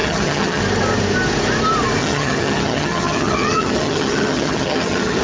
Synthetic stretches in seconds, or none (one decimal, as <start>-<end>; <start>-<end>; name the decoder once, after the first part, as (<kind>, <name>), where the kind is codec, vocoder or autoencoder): 0.0-0.6 (vocoder, HiFi-GAN); 2.0-5.2